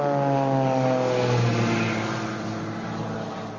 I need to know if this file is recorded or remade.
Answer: recorded